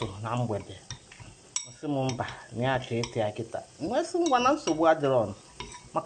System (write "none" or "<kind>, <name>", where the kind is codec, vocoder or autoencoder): none